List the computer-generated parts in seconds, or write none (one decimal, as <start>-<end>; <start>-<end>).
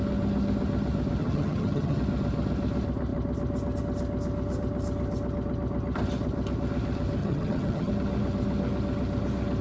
1.2-2.0; 7.2-7.9